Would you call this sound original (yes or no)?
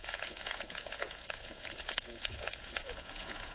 no